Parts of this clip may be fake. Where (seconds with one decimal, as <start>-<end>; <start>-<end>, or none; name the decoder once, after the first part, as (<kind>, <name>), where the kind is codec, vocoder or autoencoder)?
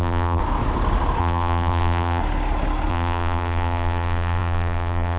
0.0-0.4 (vocoder, BigVGAN v2); 1.2-2.2; 2.9-5.2